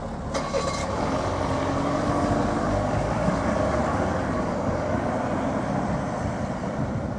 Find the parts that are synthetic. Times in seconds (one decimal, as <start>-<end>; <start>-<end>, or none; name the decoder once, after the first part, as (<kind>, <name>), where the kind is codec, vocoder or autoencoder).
0.8-5.1 (codec, DAC)